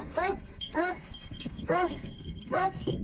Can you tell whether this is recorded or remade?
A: remade